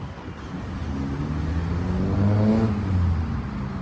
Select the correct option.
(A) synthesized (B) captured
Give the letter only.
B